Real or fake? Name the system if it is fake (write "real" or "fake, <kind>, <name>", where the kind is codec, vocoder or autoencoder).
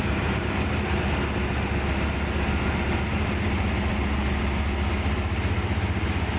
real